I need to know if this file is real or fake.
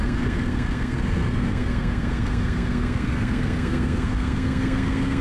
fake